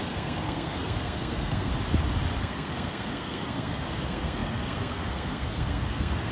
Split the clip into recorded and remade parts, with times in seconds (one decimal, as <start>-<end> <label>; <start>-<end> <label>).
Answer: 0.0-1.7 remade; 1.7-2.4 recorded; 2.4-6.3 remade